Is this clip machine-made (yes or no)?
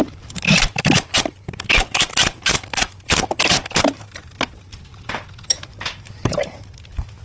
yes